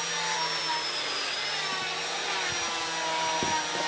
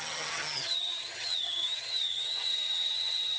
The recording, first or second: first